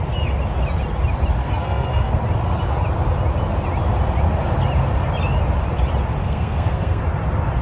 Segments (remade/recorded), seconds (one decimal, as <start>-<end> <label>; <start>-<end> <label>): 0.0-1.4 recorded; 1.4-2.1 remade; 2.1-6.2 recorded; 6.2-7.0 remade; 7.0-7.6 recorded